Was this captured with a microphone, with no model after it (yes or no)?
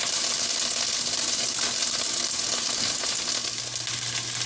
yes